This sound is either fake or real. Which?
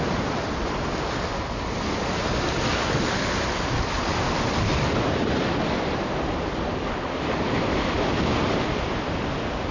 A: real